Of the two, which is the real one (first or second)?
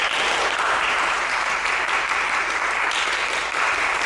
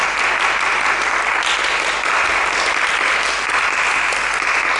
second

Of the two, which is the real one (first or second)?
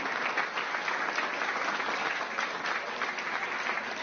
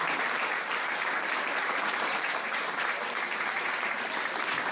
first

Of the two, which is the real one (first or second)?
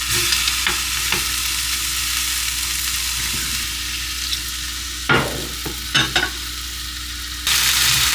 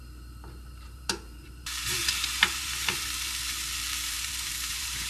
first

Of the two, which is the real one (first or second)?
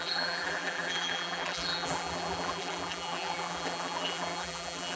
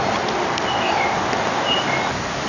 second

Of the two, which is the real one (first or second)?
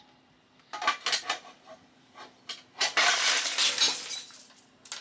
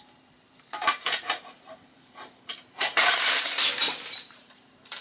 first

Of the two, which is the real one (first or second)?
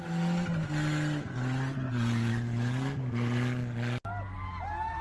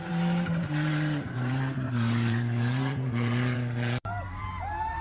first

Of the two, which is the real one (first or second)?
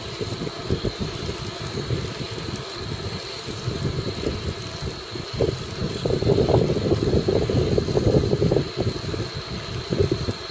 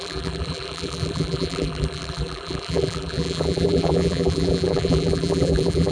first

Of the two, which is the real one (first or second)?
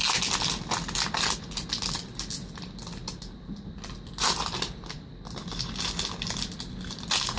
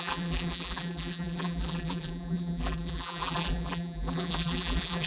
first